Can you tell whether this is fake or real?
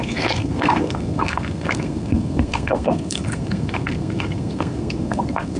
fake